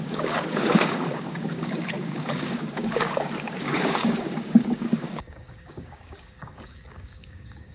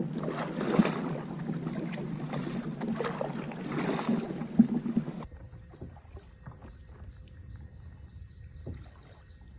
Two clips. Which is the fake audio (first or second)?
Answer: first